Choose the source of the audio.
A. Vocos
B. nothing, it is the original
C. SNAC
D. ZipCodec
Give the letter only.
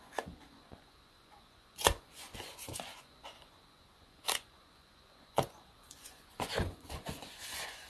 A